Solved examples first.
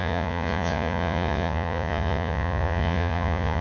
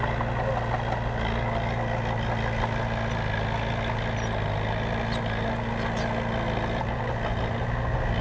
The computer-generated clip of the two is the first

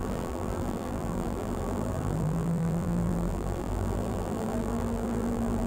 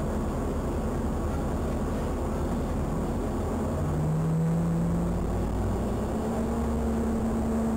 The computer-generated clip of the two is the first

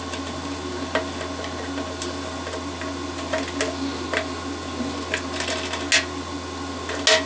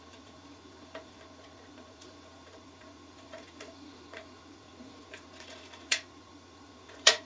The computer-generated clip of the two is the second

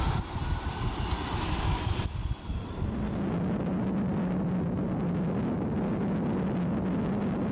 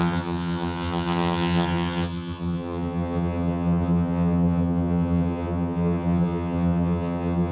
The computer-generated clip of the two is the second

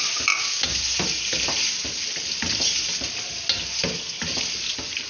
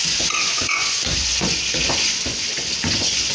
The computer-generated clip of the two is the second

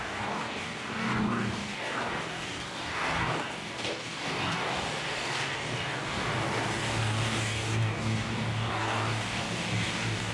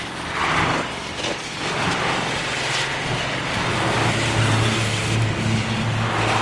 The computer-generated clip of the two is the first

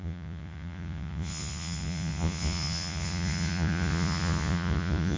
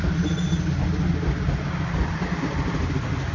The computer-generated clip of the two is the first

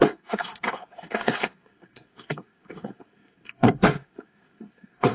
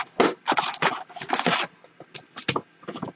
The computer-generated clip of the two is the first